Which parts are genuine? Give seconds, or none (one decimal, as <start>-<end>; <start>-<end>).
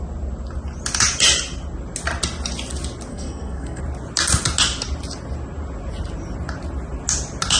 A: 0.0-3.1; 3.8-7.6